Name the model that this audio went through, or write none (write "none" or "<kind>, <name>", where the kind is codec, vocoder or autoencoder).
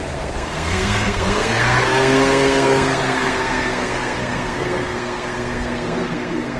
codec, SNAC